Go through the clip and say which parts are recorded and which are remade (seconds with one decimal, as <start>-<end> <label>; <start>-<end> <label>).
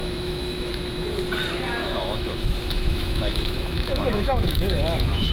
0.0-0.7 remade; 0.7-1.8 recorded; 1.8-5.3 remade